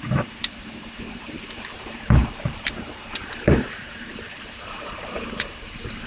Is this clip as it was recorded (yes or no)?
no